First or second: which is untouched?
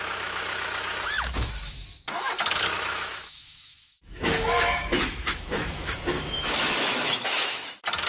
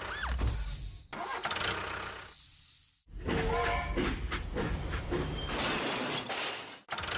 second